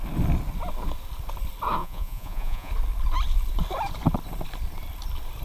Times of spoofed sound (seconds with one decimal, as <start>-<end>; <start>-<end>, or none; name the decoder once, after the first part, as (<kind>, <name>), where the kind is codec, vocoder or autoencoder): 1.8-2.7 (vocoder, Vocos)